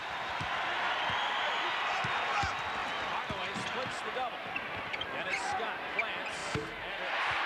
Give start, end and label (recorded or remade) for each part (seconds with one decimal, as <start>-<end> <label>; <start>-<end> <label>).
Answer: 0.0-2.8 recorded; 2.8-5.8 remade; 5.8-7.5 recorded